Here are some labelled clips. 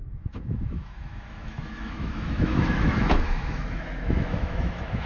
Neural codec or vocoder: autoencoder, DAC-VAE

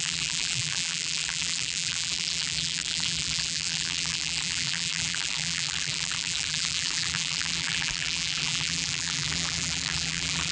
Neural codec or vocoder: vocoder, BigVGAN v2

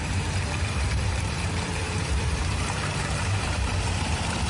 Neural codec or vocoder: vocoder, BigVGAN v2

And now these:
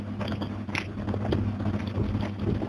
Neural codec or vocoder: none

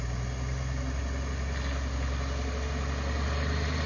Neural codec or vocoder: none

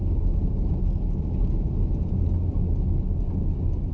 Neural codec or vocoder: none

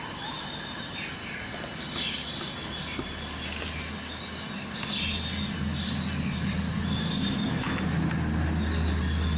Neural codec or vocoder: none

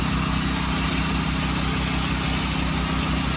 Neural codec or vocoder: none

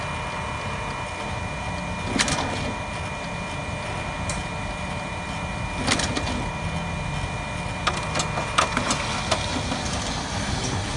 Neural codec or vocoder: none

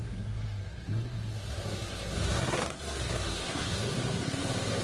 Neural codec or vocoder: codec, SNAC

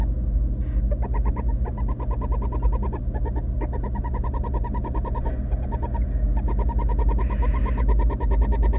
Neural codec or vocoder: none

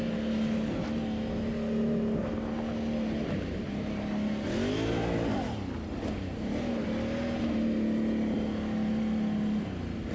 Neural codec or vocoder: none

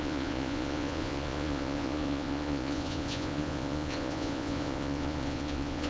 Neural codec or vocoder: vocoder, Vocos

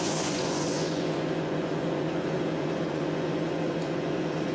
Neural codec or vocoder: vocoder, Vocos